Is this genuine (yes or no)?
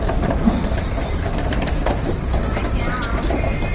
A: no